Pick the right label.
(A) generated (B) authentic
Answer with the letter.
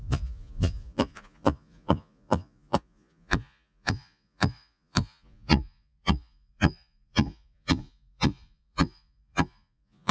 A